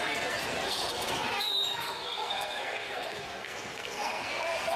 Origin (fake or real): fake